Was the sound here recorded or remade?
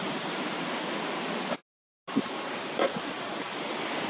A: recorded